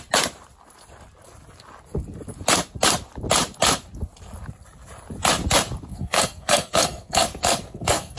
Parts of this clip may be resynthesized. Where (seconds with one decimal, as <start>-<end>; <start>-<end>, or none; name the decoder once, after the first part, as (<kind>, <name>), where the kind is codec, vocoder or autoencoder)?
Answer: 5.9-8.2 (codec, SNAC)